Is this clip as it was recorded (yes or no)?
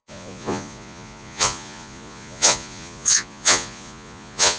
no